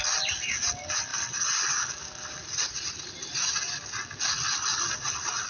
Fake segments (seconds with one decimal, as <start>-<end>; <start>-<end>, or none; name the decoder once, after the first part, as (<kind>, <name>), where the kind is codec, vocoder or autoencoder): 1.1-1.8 (vocoder, BigVGAN v2)